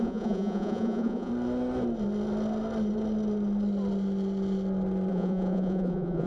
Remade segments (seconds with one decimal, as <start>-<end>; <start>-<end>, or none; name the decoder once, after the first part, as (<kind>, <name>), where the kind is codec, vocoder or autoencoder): 0.0-1.3 (vocoder, Vocos); 5.1-6.3